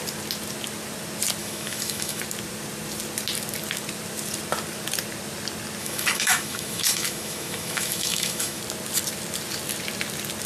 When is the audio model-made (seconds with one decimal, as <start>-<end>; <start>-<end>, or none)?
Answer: 1.4-2.2; 5.8-8.6